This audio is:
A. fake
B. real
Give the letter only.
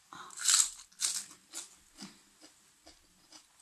B